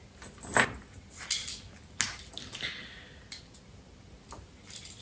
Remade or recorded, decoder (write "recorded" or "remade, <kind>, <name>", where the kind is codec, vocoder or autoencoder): recorded